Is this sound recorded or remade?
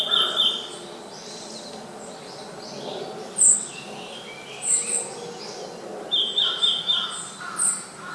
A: recorded